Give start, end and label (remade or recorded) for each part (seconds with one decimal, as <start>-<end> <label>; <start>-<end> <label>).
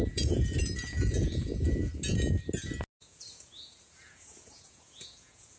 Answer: 0.0-1.9 remade; 1.9-3.0 recorded; 3.0-5.6 remade